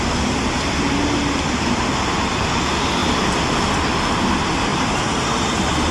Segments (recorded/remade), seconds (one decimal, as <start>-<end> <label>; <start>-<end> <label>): 0.0-4.7 recorded; 4.7-5.3 remade; 5.3-5.9 recorded